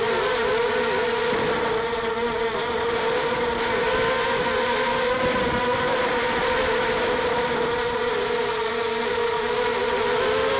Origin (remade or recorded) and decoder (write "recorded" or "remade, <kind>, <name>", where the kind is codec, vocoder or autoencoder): recorded